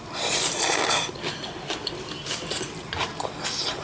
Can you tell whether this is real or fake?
real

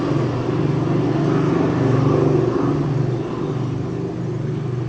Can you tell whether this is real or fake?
real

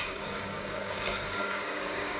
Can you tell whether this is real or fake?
fake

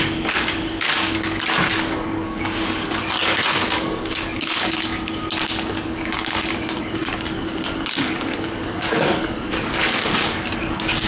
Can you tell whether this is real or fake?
fake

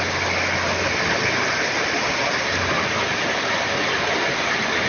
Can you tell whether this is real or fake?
real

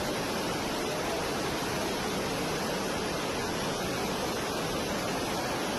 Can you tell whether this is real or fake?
real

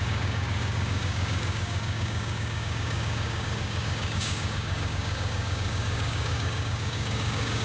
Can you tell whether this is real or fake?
fake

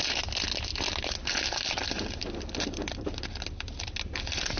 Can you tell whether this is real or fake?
real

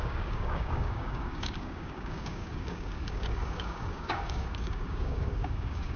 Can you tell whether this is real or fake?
fake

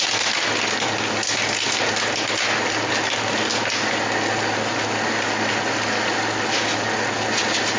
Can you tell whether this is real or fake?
real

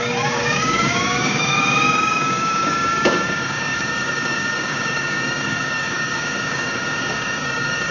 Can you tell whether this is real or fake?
fake